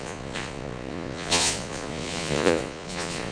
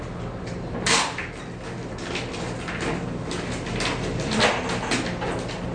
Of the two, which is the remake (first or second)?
first